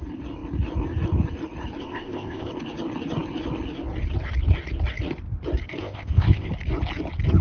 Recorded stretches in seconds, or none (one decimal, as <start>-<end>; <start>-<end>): 0.0-1.8; 2.5-5.8; 6.5-7.4